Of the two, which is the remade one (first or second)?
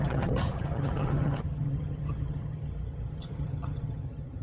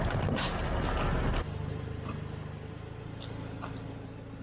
first